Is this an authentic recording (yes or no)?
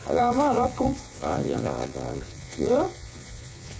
no